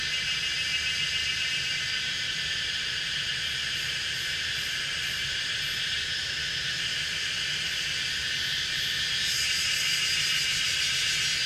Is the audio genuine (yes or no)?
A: yes